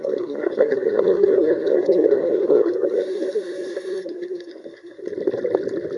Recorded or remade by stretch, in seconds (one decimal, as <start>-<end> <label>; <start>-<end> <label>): 0.0-5.0 remade; 5.0-6.0 recorded